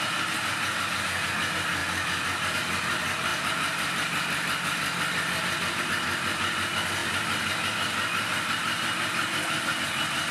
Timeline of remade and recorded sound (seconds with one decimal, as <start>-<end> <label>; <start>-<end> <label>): 0.0-1.8 recorded; 1.8-2.5 remade; 2.5-3.3 recorded; 3.3-5.8 remade; 5.8-10.3 recorded